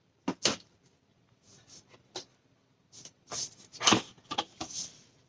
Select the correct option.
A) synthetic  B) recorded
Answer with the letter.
B